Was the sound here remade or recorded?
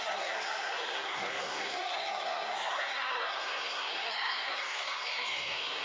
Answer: remade